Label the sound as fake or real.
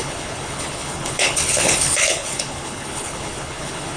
fake